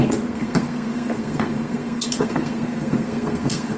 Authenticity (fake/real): fake